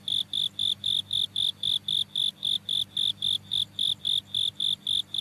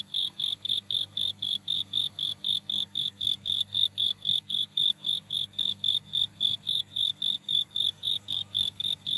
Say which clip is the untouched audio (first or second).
first